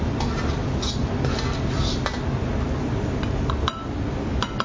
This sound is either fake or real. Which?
real